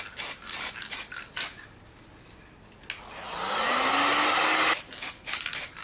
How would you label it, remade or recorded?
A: recorded